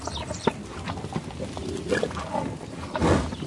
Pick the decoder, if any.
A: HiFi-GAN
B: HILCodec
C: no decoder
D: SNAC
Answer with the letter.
C